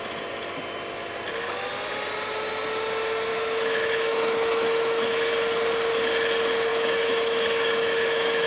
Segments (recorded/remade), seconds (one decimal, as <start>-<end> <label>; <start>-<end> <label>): 0.0-3.3 recorded; 3.3-5.3 remade; 5.3-6.7 recorded; 6.7-8.5 remade